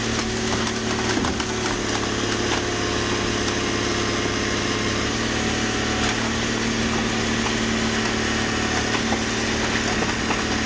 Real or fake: real